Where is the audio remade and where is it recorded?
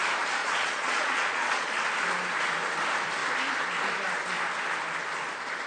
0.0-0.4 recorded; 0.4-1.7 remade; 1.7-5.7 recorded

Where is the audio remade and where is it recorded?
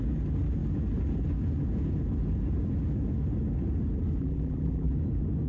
0.0-4.2 recorded; 4.2-4.9 remade; 4.9-5.5 recorded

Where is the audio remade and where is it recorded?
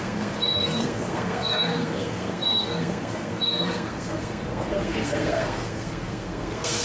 0.0-6.8 remade